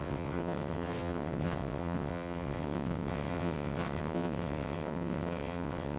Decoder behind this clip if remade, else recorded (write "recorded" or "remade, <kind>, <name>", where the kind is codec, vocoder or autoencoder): remade, vocoder, WaveNeXt